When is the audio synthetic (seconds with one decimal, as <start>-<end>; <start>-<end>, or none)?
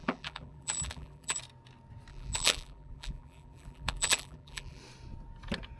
0.0-1.4; 2.1-4.8